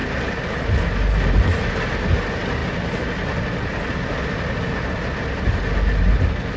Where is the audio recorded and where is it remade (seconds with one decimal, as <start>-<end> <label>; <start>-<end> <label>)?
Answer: 0.0-6.6 recorded